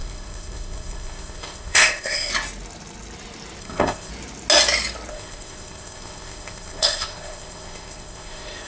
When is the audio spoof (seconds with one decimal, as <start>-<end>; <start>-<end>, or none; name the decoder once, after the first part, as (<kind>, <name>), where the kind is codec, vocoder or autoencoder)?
0.0-2.3 (codec, ZipCodec); 3.6-4.1; 5.1-8.7